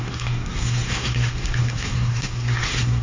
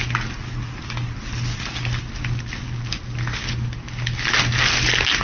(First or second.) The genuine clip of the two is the second